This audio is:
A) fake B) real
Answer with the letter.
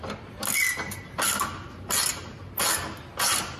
B